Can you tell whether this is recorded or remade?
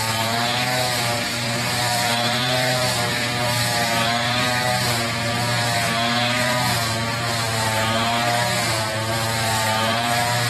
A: remade